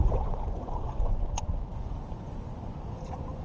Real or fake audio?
fake